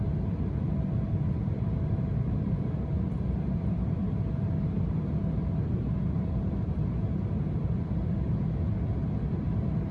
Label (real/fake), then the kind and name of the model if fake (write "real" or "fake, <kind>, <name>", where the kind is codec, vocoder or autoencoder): fake, vocoder, BigVGAN v2